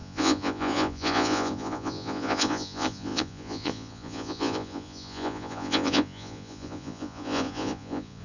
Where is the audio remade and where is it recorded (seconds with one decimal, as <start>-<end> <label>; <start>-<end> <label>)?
0.0-8.2 remade